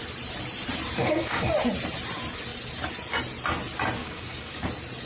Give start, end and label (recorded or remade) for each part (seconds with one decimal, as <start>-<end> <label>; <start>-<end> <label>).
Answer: 0.0-1.0 recorded; 1.0-1.5 remade; 1.5-4.0 recorded; 4.0-4.6 remade; 4.6-5.1 recorded